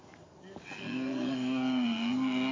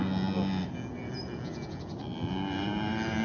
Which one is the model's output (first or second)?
first